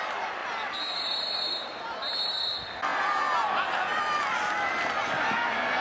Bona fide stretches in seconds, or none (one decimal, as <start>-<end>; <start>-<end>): 0.0-0.4; 1.5-5.8